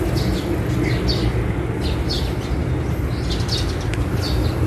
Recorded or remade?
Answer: recorded